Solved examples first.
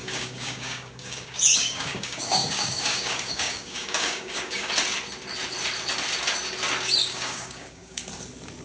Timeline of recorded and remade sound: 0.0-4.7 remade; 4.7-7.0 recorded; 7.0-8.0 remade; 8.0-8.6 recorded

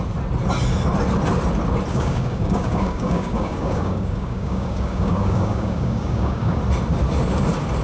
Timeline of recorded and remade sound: 0.0-1.9 recorded; 1.9-6.6 remade; 6.6-7.8 recorded